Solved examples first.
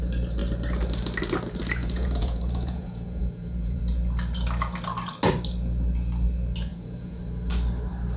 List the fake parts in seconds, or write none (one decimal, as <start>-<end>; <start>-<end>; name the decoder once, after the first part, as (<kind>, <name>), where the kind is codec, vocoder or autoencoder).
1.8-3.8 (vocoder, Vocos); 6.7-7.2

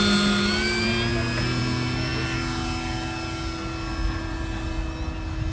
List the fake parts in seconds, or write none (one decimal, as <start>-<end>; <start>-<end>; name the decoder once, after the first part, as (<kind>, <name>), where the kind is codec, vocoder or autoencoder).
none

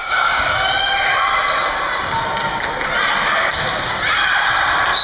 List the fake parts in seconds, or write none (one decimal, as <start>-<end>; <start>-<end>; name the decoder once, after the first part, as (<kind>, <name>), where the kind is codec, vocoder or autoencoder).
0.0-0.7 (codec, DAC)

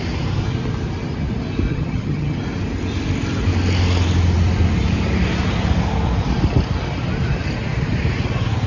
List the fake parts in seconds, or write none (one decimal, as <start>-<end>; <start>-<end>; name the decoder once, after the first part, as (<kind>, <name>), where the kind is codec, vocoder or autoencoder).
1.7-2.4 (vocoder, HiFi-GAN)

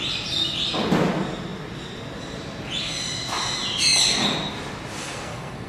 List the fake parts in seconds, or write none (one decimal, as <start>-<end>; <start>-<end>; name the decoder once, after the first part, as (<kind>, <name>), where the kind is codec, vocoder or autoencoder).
5.0-5.7 (codec, SNAC)